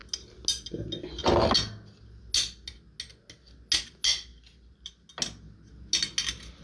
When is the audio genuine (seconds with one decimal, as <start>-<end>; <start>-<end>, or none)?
0.0-6.6

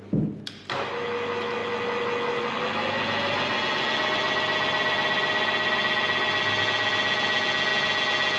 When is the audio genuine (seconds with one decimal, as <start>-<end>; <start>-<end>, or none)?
0.0-8.4

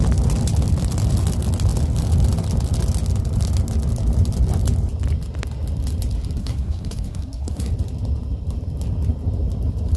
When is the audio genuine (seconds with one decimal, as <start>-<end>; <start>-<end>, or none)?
0.0-6.4; 7.7-10.0

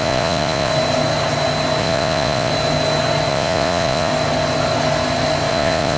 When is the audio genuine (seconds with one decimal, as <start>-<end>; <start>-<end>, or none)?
0.7-1.8; 2.5-3.3; 4.1-5.5

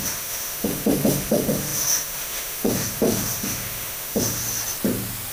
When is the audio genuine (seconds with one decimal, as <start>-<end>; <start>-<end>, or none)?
4.4-5.3